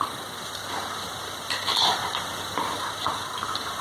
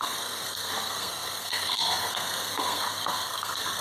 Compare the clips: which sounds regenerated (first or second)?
second